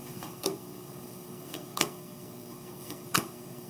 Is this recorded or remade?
remade